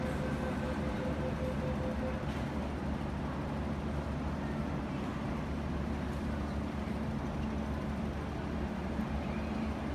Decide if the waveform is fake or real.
real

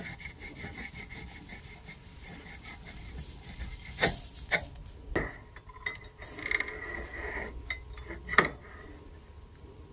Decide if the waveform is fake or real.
real